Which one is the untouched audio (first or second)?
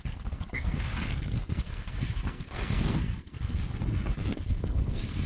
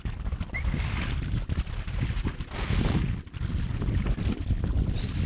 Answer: second